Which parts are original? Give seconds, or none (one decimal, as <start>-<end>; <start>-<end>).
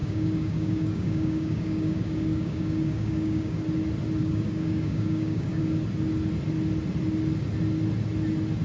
3.6-4.2; 5.6-8.6